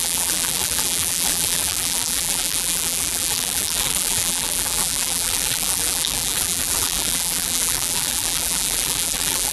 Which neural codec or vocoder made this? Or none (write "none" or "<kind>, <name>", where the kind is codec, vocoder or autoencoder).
vocoder, BigVGAN v2